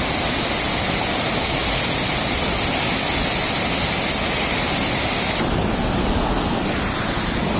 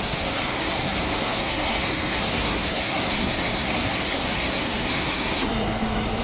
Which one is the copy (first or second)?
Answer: second